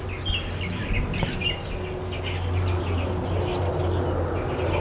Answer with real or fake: real